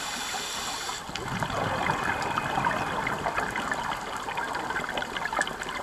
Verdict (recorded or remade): recorded